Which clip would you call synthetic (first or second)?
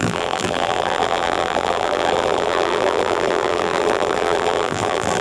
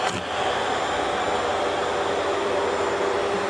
first